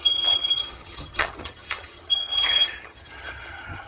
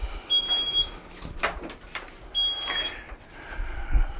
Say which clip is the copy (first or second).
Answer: first